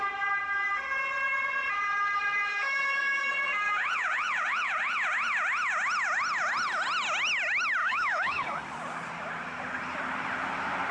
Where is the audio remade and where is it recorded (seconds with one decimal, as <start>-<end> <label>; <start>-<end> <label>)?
0.0-2.5 recorded; 2.5-3.3 remade; 3.3-7.8 recorded; 7.8-8.7 remade; 8.7-10.9 recorded